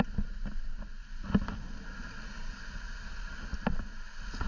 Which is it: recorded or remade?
recorded